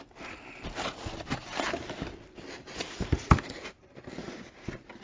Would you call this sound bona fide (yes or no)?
yes